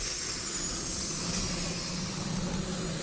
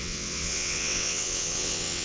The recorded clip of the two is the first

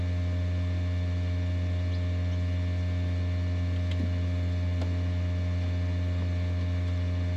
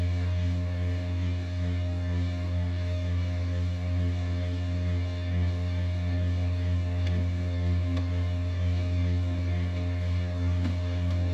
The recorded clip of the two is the first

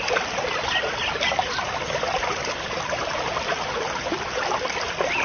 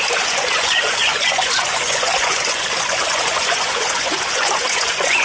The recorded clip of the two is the first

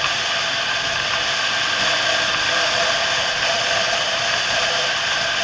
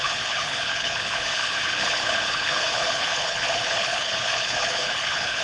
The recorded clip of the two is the first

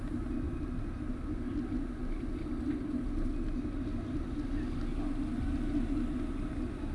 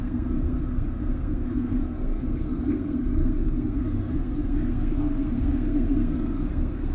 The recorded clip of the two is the first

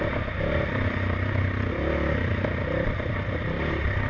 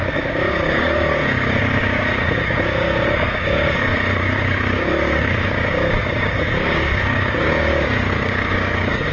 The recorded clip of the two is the first